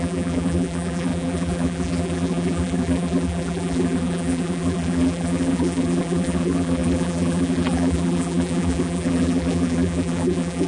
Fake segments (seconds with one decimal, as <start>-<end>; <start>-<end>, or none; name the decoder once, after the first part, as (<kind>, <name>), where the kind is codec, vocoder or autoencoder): 0.0-10.7 (vocoder, BigVGAN v2)